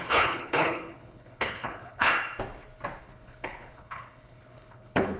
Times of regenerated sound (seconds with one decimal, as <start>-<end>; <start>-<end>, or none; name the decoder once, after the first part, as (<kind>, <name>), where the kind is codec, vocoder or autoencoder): 0.0-2.1 (codec, HILCodec); 3.0-5.2